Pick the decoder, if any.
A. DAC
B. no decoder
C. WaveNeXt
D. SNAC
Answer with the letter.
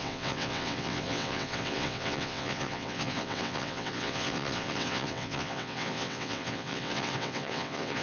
C